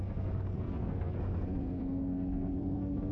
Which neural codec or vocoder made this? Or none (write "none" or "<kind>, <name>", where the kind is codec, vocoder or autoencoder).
codec, SNAC